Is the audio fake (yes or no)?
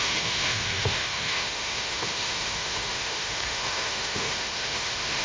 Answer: yes